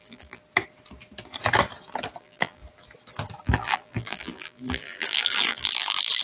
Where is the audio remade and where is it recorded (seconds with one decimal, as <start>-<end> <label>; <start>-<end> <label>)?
0.0-0.4 remade; 0.4-2.2 recorded; 2.2-2.6 remade; 2.6-3.4 recorded; 3.4-6.2 remade